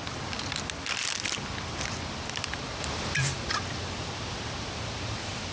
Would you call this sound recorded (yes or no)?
no